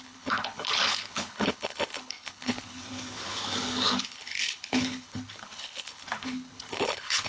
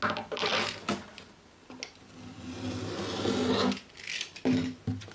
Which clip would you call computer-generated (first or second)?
first